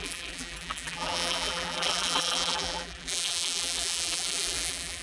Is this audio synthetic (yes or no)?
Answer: yes